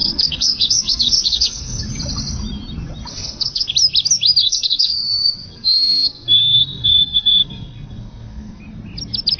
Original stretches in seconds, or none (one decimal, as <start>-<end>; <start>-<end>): 1.8-3.1; 3.7-4.4; 8.6-9.4